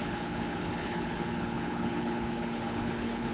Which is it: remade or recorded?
remade